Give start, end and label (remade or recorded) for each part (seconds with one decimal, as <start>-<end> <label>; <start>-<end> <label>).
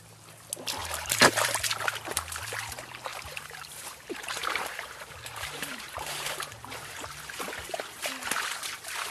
0.0-0.8 recorded; 0.8-1.5 remade; 1.5-3.1 recorded; 3.1-7.2 remade; 7.2-9.1 recorded